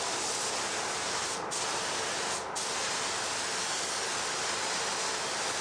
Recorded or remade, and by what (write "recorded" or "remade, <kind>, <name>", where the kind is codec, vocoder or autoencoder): recorded